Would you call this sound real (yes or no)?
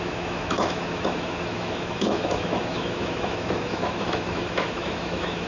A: no